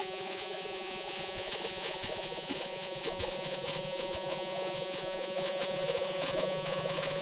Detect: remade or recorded remade